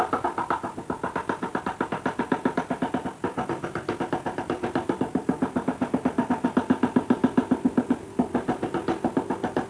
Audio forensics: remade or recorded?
recorded